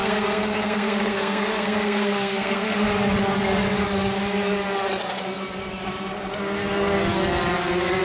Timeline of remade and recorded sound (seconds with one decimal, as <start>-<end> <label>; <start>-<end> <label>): 0.0-2.8 remade; 2.8-8.0 recorded